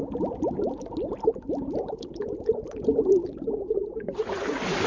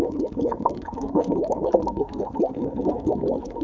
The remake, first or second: second